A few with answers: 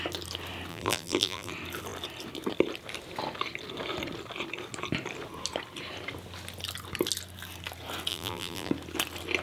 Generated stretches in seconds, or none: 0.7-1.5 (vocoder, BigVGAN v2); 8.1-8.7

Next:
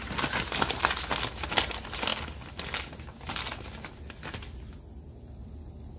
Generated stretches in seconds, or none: none

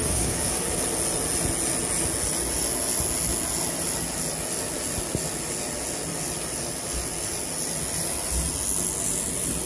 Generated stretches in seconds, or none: 0.0-0.8 (codec, DAC)

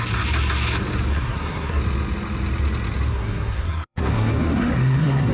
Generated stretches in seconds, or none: 1.1-1.8 (codec, SNAC); 3.1-5.3

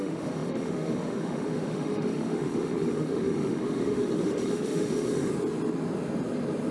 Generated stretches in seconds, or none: 0.0-5.3 (autoencoder, DAC-VAE)

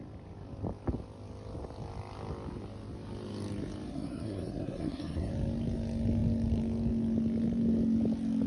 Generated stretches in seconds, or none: 3.9-5.3 (codec, SNAC)